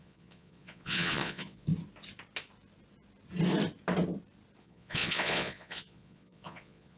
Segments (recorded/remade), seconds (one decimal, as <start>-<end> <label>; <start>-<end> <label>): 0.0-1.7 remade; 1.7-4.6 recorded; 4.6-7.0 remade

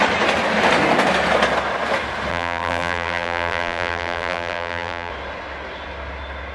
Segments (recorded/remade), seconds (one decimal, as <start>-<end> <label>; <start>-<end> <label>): 0.0-2.3 recorded; 2.3-5.1 remade; 5.1-6.5 recorded

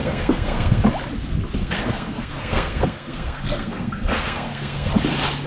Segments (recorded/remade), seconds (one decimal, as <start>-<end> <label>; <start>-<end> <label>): 0.0-0.8 remade; 0.8-1.6 recorded; 1.6-4.9 remade; 4.9-5.5 recorded

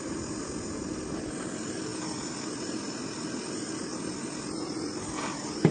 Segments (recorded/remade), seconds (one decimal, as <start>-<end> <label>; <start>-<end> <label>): 0.0-5.7 recorded

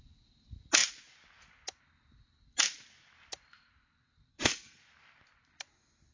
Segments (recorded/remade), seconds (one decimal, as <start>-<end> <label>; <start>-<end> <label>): 0.0-4.3 recorded; 4.3-4.8 remade; 4.8-6.1 recorded

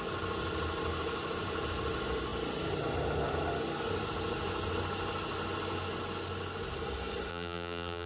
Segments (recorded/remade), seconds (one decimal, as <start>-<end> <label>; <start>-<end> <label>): 0.0-7.3 recorded; 7.3-8.1 remade

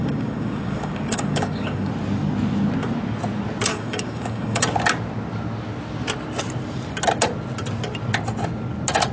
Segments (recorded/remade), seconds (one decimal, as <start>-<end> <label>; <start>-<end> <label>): 0.0-1.9 remade; 1.9-3.7 recorded; 3.7-4.6 remade; 4.6-9.1 recorded

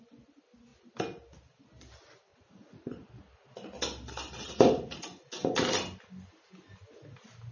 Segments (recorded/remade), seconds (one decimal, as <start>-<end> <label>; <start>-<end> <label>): 0.0-7.5 recorded